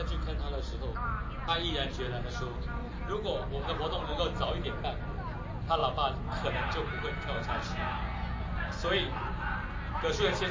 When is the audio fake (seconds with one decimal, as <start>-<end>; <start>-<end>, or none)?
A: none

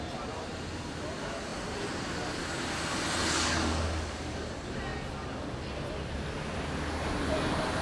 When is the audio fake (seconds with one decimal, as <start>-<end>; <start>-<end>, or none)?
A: 3.2-4.5

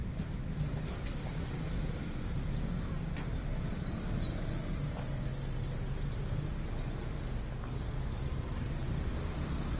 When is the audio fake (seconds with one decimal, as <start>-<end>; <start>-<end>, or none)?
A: 0.0-5.3; 7.7-9.8

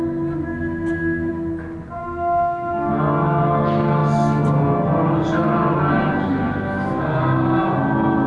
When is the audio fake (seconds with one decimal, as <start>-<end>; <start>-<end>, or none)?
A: 2.0-2.9

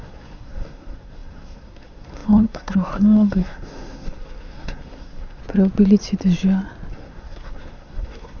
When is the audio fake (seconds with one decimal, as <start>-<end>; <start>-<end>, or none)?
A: 0.0-5.4; 6.9-8.4

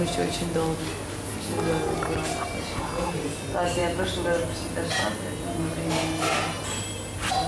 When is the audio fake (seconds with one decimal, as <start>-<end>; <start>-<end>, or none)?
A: none

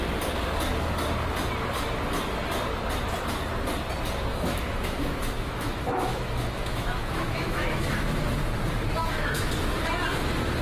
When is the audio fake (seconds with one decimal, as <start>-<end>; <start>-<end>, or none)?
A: 4.3-8.2; 9.0-9.6